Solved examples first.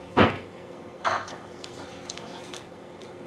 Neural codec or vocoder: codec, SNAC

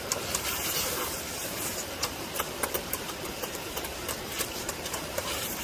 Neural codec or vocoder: vocoder, BigVGAN v2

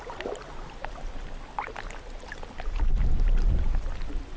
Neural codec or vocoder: none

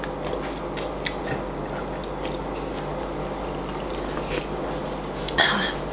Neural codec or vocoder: none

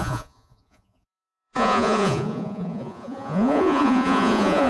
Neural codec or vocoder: vocoder, Vocos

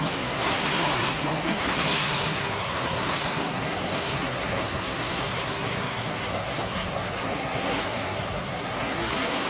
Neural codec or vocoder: codec, SNAC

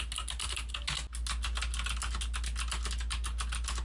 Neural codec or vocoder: none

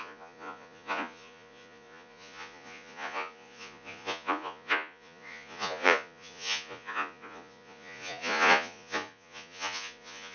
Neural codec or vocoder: vocoder, Vocos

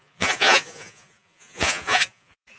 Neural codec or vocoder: vocoder, Vocos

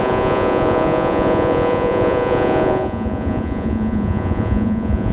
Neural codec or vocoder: vocoder, Vocos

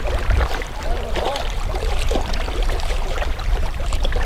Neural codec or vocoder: vocoder, BigVGAN v2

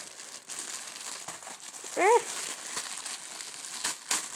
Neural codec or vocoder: none